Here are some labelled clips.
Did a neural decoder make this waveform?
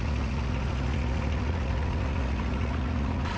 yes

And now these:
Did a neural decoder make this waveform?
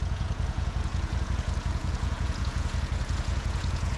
yes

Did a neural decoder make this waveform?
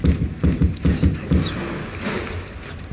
no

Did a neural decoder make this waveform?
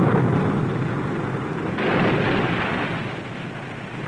no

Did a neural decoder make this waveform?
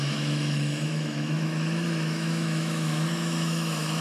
yes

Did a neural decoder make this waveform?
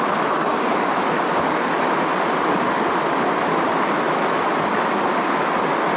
no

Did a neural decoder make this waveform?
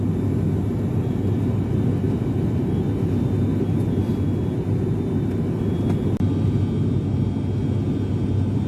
no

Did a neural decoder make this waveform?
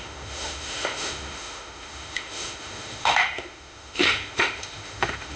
yes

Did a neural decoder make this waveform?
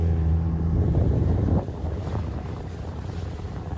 yes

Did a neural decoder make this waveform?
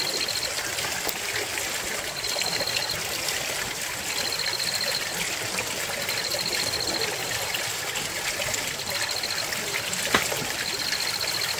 no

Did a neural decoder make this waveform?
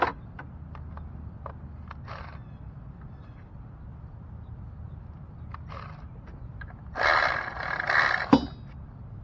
no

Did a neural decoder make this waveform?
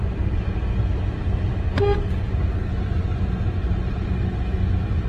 no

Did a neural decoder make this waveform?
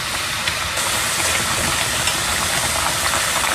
no